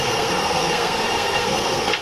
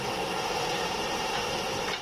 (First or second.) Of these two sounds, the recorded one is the second